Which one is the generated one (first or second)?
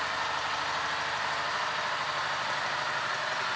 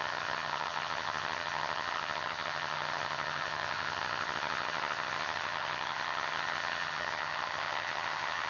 second